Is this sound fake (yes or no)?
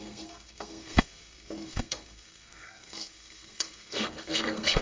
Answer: yes